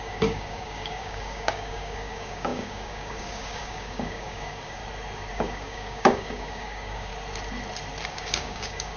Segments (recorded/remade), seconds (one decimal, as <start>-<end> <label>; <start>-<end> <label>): 0.0-4.8 remade; 4.8-5.3 recorded; 5.3-7.1 remade; 7.1-8.1 recorded; 8.1-9.0 remade